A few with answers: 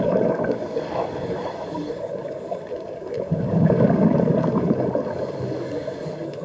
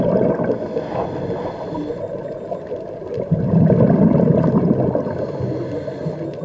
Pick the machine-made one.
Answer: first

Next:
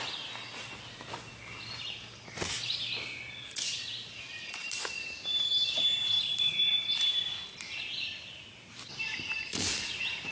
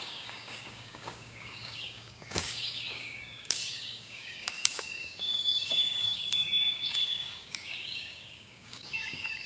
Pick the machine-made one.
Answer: second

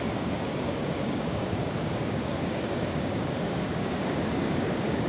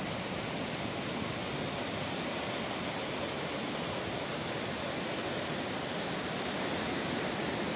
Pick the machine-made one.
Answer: first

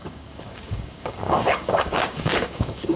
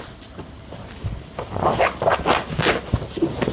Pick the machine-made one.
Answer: first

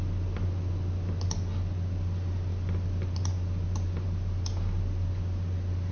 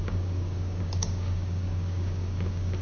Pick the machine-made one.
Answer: second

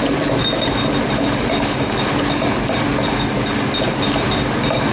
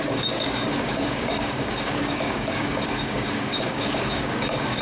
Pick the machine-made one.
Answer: second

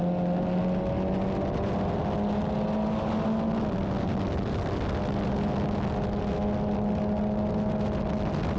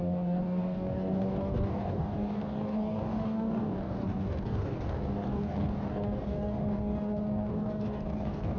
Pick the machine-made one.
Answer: second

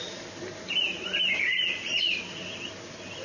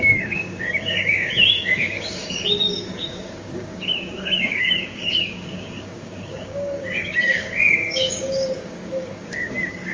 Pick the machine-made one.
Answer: second